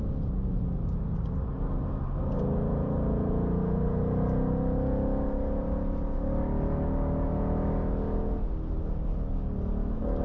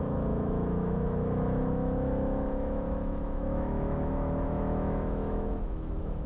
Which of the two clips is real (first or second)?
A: first